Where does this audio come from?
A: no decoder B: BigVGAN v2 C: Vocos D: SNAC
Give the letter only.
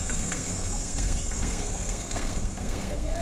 D